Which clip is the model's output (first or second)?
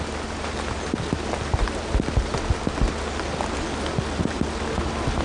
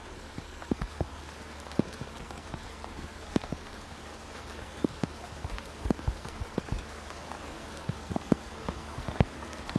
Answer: second